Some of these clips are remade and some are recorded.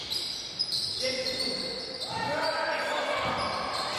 recorded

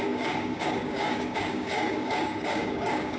remade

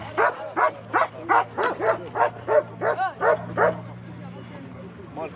recorded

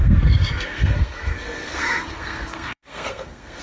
remade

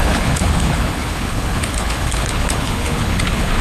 remade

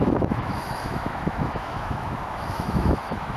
remade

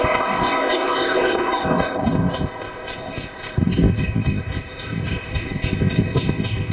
remade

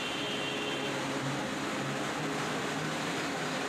recorded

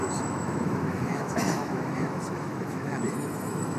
remade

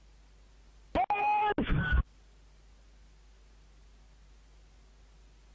recorded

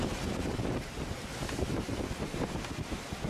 recorded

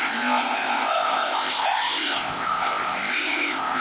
remade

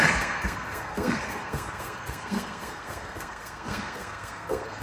remade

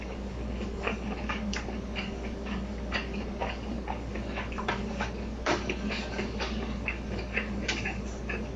remade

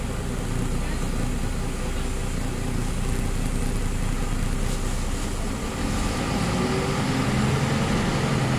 recorded